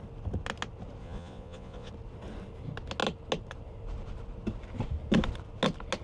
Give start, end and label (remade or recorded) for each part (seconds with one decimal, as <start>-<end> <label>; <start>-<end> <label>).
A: 0.0-1.0 recorded; 1.0-1.9 remade; 1.9-6.0 recorded